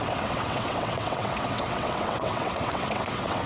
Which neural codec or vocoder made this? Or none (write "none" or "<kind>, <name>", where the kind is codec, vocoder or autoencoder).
vocoder, WaveNeXt